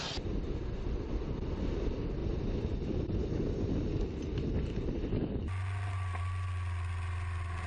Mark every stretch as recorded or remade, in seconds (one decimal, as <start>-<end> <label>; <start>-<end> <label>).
0.0-2.2 recorded; 2.2-3.3 remade; 3.3-7.7 recorded